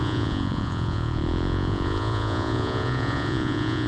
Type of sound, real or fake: fake